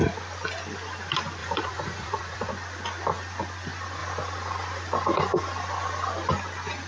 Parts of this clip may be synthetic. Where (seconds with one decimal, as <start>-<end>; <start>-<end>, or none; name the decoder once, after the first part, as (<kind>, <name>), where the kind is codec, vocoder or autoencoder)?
1.4-2.5 (vocoder, Vocos)